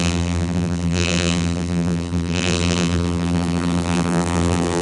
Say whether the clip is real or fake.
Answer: fake